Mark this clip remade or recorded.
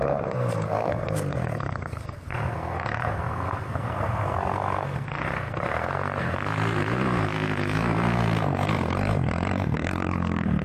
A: remade